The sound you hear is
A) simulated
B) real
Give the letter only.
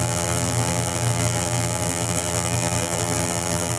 A